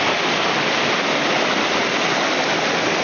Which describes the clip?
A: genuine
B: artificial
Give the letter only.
A